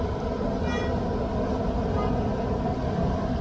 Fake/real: real